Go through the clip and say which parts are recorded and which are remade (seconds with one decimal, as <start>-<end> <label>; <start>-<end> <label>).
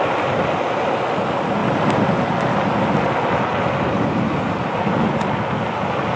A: 0.0-6.2 recorded